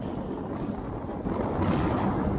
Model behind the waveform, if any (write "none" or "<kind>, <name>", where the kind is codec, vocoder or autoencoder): none